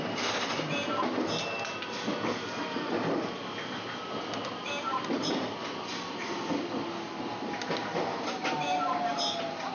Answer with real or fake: real